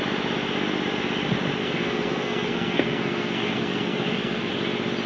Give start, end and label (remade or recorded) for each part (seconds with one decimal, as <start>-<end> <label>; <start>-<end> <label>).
0.0-1.6 recorded; 1.6-4.5 remade; 4.5-5.1 recorded